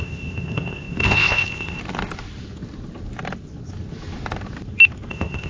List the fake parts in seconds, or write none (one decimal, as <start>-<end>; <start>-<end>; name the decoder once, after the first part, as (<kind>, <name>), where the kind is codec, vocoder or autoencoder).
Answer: 0.0-1.8 (codec, ZipCodec); 5.1-5.5